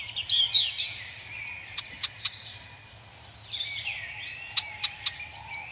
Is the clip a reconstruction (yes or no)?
no